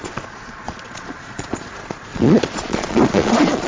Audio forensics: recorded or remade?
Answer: remade